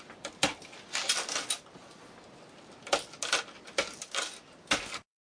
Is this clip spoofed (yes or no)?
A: no